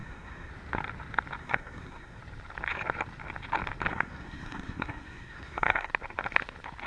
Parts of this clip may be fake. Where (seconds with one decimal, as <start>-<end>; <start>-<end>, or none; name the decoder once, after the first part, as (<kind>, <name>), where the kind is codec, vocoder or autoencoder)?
0.0-0.5 (codec, SNAC); 1.4-2.2; 3.9-5.9